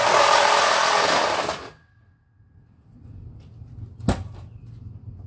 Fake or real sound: real